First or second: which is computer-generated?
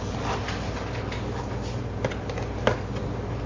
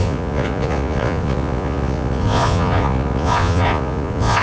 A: second